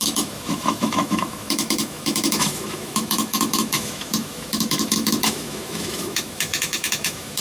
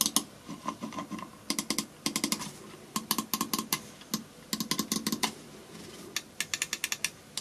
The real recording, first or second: second